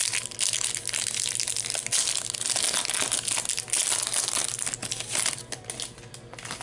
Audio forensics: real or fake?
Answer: real